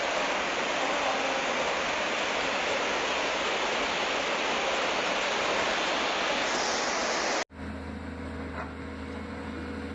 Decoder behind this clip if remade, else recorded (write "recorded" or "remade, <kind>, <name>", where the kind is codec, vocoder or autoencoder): recorded